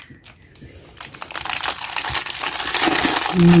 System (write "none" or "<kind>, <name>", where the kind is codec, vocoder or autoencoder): none